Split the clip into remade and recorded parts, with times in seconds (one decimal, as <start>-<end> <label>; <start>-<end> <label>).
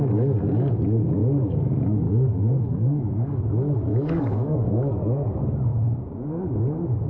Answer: 0.0-0.7 remade; 0.7-1.2 recorded; 1.2-3.4 remade; 3.4-3.9 recorded; 3.9-4.9 remade; 4.9-7.1 recorded